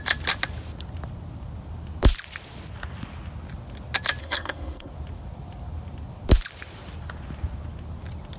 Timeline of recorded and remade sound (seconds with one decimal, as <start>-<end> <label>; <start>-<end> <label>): 0.0-4.2 recorded; 4.2-4.9 remade; 4.9-8.4 recorded